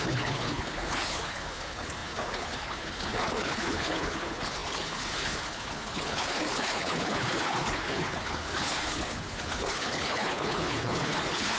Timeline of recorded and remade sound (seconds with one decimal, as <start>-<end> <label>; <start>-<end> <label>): 0.0-11.6 remade